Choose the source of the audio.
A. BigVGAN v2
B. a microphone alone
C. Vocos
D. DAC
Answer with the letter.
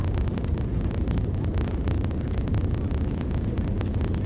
B